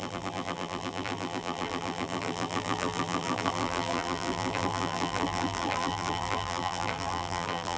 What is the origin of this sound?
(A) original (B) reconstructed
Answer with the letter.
B